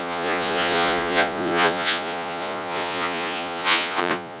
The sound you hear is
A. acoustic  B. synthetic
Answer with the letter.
B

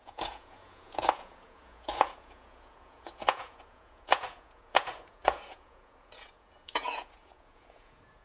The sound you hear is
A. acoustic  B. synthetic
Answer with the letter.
B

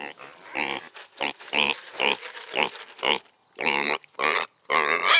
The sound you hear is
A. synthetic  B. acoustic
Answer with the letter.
B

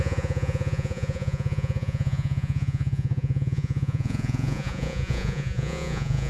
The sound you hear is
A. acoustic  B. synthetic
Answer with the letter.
B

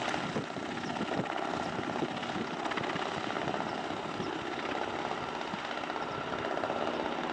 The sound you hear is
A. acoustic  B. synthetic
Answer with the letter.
A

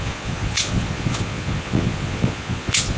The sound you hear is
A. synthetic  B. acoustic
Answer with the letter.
A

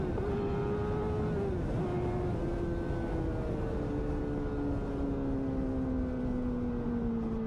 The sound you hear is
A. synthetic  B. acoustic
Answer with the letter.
B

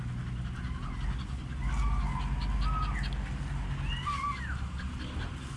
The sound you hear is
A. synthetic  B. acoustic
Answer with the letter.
B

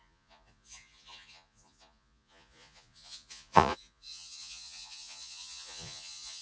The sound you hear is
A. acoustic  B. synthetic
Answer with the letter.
B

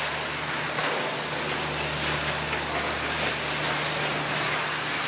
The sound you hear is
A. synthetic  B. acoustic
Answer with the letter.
B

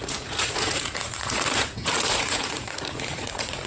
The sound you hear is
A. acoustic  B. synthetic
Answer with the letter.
B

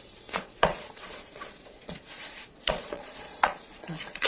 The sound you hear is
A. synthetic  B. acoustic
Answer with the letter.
A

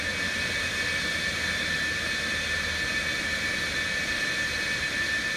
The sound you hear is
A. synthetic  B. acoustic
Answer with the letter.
B